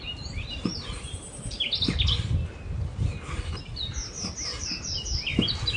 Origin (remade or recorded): recorded